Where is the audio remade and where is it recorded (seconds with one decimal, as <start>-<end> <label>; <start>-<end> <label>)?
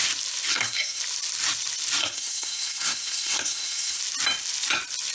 0.0-0.5 recorded; 0.5-1.0 remade; 1.0-2.0 recorded; 2.0-4.0 remade; 4.0-5.1 recorded